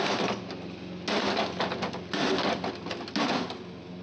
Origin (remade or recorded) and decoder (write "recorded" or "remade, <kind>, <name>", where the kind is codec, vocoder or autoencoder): recorded